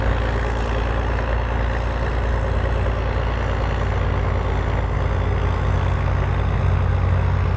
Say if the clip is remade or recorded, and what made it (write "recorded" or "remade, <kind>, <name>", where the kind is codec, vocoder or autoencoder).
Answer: recorded